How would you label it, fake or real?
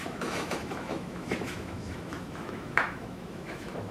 fake